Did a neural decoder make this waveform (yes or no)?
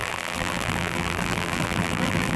yes